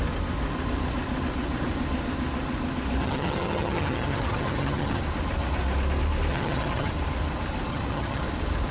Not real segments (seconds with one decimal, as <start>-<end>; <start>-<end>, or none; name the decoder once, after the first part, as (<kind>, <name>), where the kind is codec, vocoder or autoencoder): 3.0-5.0 (vocoder, HiFi-GAN); 6.3-6.9; 7.7-8.2